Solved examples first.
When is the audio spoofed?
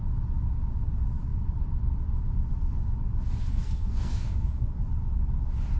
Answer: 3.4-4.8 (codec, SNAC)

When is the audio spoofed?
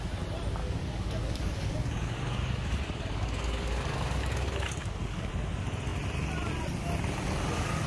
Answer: 0.6-5.3 (codec, DAC)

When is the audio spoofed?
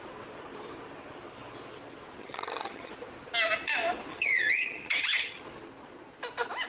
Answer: 2.2-2.9 (vocoder, HiFi-GAN); 4.1-5.4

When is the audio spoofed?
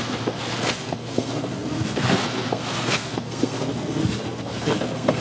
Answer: 0.0-5.2 (codec, SNAC)